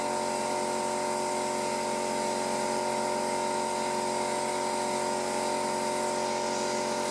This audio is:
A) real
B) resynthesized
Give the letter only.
A